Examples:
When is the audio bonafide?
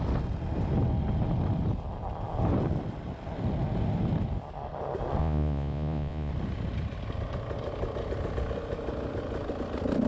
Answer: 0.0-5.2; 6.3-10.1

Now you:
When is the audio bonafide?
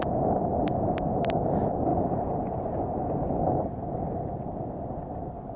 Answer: 0.0-5.6